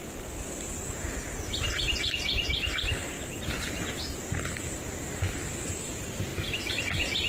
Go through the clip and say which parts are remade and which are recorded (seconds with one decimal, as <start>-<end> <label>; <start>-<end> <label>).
0.0-6.3 recorded; 6.3-6.8 remade; 6.8-7.3 recorded